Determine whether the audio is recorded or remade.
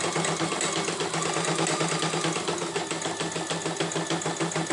recorded